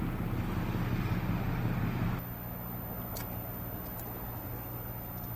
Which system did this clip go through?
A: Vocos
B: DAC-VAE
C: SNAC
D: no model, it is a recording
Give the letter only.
D